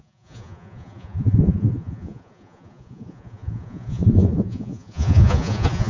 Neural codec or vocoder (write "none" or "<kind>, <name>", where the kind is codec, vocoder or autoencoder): vocoder, Vocos